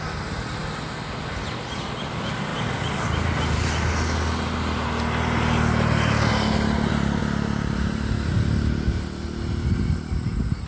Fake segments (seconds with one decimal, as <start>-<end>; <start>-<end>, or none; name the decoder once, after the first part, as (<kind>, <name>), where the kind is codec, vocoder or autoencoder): none